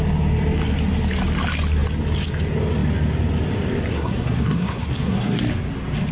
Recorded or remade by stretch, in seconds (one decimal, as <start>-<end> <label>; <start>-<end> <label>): 0.0-3.9 recorded; 3.9-5.4 remade; 5.4-6.1 recorded